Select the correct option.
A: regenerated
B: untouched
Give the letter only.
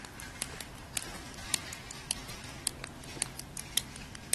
A